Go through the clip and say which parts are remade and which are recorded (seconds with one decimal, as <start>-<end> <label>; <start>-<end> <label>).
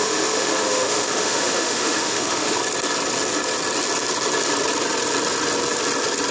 0.0-2.6 remade; 2.6-6.3 recorded